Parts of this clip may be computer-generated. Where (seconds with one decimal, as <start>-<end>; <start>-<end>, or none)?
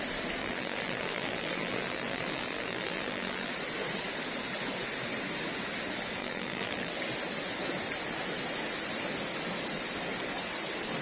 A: 0.4-3.5; 6.2-6.9